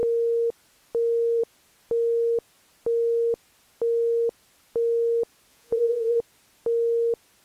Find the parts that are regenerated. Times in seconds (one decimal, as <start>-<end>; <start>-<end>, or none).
5.5-6.2